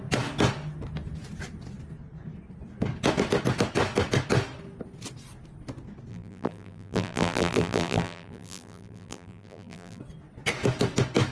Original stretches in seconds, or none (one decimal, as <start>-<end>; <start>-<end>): 0.0-6.1; 10.0-11.3